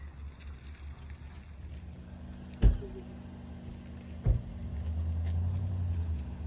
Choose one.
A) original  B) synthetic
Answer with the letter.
A